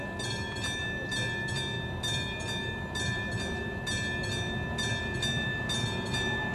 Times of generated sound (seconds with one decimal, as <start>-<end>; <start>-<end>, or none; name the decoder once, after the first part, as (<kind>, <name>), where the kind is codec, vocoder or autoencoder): none